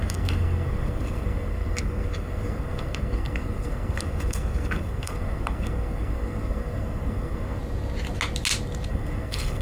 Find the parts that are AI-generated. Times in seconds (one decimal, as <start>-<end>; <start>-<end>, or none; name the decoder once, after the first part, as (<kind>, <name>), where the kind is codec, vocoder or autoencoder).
0.0-7.6 (codec, SNAC); 8.9-9.6